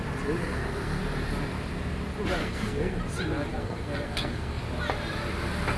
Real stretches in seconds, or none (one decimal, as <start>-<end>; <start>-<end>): 0.0-0.4; 1.0-2.4; 3.0-3.5; 4.6-5.8